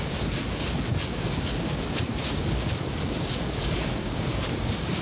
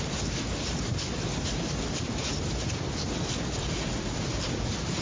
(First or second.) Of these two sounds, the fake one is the first